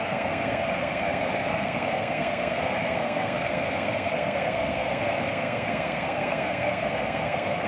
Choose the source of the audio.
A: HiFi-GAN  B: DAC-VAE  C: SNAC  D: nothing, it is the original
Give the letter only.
C